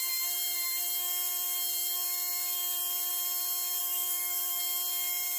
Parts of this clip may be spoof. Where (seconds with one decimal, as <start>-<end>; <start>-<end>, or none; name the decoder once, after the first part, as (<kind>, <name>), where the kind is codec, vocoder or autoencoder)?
3.8-4.6 (codec, SNAC)